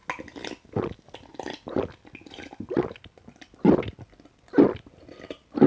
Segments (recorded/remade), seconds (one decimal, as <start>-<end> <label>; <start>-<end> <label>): 0.0-5.7 recorded